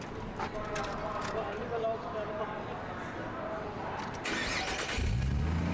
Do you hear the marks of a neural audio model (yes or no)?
no